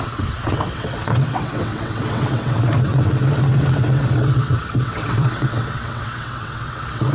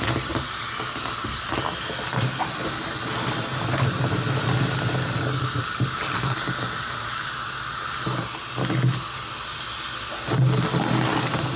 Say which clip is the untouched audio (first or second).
second